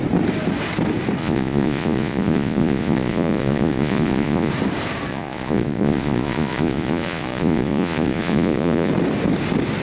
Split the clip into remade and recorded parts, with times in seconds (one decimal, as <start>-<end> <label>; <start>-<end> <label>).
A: 0.0-1.2 recorded; 1.2-4.5 remade; 4.5-5.1 recorded; 5.1-8.9 remade; 8.9-9.8 recorded